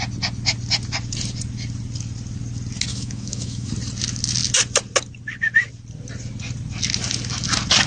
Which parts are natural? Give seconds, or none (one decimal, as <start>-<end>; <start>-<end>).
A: 0.0-2.9; 3.7-7.9